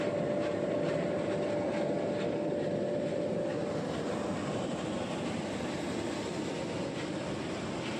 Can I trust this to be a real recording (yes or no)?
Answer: yes